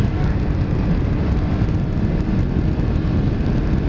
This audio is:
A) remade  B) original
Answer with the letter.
B